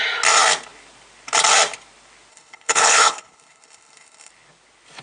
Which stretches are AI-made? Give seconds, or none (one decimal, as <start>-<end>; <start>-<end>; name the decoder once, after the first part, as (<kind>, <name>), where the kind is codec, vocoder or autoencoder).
2.3-4.3 (codec, HILCodec)